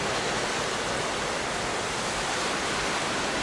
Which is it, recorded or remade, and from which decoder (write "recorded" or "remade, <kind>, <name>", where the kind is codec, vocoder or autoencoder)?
recorded